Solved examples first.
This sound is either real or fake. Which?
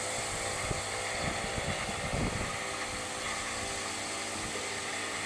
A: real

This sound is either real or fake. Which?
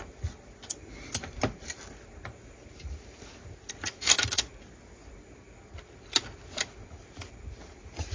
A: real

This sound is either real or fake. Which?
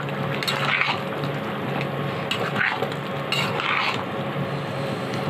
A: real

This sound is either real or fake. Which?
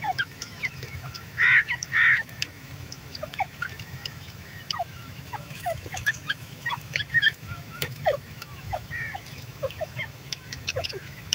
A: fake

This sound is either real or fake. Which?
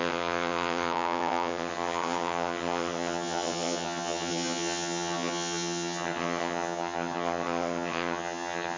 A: fake